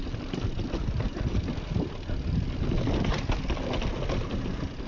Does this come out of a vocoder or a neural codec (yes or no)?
no